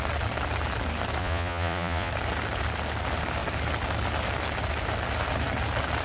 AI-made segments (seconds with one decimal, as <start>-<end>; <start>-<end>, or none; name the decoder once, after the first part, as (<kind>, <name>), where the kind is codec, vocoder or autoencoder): 1.2-2.1 (vocoder, Vocos)